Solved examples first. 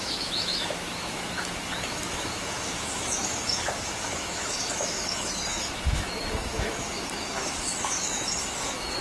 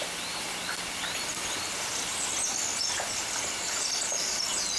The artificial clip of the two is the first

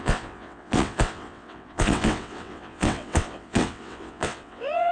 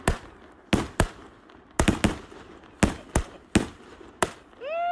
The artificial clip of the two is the first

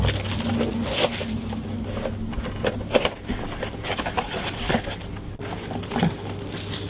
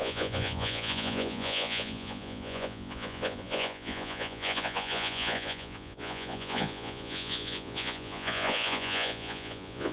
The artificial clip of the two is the second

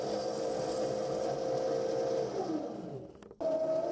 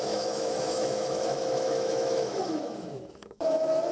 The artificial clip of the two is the second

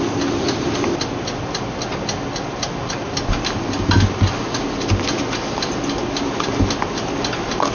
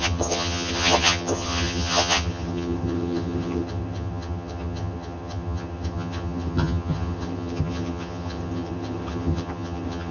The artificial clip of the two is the second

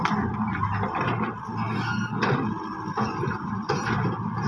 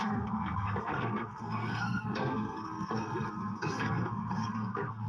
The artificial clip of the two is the second